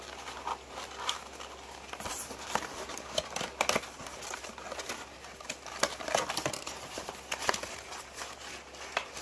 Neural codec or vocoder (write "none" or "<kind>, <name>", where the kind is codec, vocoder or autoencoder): none